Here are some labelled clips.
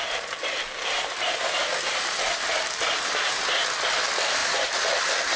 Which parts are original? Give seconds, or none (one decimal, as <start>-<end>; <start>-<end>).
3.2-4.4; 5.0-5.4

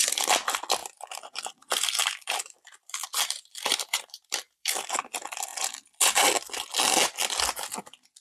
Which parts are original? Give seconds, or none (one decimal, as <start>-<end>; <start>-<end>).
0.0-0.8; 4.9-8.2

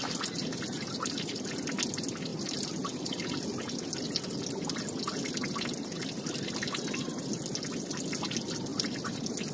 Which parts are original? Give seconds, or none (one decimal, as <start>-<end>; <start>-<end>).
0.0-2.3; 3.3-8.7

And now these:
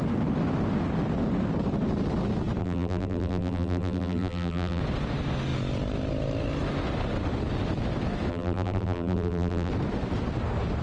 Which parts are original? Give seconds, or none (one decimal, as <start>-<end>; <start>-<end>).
0.0-2.6; 4.8-8.3; 9.7-10.8

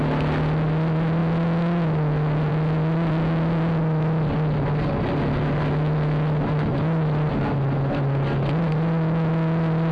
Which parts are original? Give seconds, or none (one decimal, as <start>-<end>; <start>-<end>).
0.0-6.7; 7.3-9.9

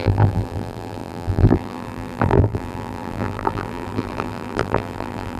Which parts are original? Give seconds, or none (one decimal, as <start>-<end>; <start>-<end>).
none